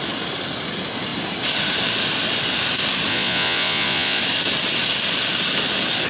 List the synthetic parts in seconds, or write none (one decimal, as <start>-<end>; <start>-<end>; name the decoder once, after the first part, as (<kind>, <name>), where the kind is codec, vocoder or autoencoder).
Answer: 3.1-4.2 (vocoder, Vocos)